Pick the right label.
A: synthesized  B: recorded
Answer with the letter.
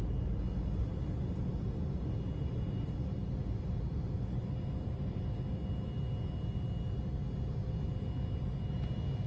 B